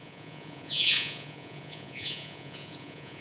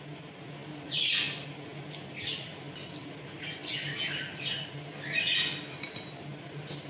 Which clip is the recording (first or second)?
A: second